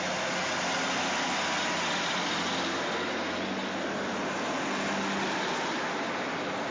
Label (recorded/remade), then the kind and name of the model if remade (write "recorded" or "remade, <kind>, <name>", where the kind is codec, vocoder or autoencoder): recorded